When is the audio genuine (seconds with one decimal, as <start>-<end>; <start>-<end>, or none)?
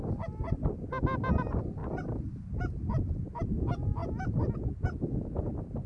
0.0-5.9